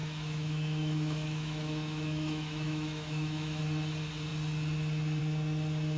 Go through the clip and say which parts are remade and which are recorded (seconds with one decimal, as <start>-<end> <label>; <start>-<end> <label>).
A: 0.0-3.6 remade; 3.6-6.0 recorded